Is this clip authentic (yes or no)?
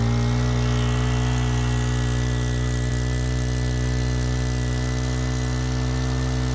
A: yes